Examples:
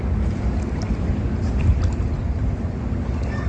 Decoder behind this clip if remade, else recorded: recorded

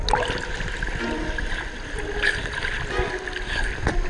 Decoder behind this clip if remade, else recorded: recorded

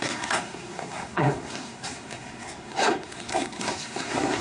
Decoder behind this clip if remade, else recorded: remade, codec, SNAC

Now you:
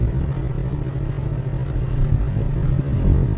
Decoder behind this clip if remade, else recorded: recorded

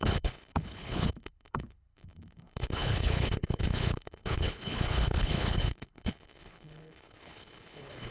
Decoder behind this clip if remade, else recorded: remade, codec, HILCodec